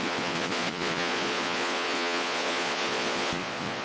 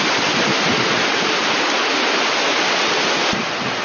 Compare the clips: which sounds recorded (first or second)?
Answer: second